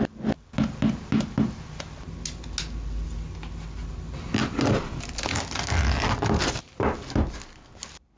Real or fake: real